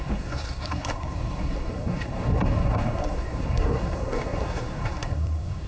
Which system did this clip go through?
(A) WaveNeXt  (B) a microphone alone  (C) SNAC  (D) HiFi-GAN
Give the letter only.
C